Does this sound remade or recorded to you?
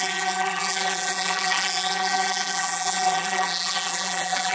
remade